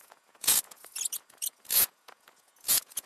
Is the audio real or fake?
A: fake